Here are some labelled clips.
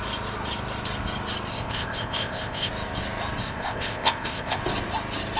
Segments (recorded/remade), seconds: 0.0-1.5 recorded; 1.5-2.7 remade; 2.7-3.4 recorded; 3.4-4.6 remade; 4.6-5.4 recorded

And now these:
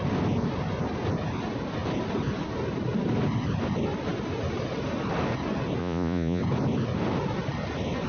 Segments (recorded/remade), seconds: 0.0-5.8 recorded; 5.8-6.4 remade; 6.4-8.1 recorded

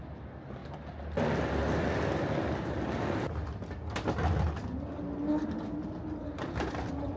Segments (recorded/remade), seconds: 0.0-7.2 recorded

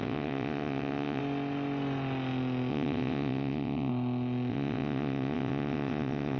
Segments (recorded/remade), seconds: 0.0-1.2 remade; 1.2-2.7 recorded; 2.7-3.9 remade; 3.9-4.5 recorded; 4.5-6.4 remade

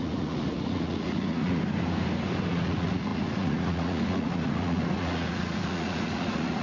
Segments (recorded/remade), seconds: 0.0-1.6 remade; 1.6-2.5 recorded; 2.5-6.6 remade